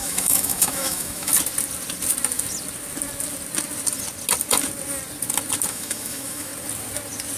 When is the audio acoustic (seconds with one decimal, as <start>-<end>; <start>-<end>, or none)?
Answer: 1.3-5.7; 6.5-7.4